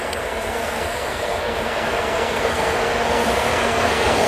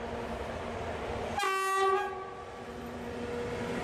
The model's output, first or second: first